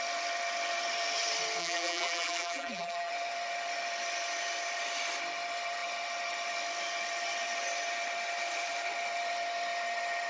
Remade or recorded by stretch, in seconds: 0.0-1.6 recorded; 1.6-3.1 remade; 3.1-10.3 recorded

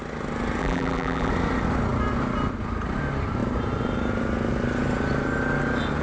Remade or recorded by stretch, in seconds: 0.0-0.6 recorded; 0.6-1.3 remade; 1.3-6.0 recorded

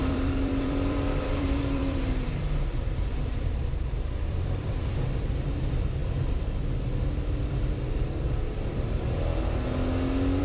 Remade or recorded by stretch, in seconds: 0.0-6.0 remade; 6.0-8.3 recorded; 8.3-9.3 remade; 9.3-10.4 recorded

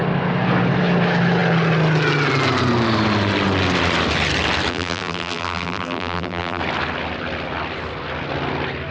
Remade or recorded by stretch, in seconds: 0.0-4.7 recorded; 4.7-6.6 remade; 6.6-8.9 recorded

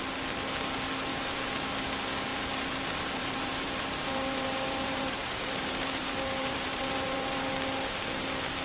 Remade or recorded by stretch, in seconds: 0.0-1.1 recorded; 1.1-1.9 remade; 1.9-2.3 recorded; 2.3-7.5 remade; 7.5-8.6 recorded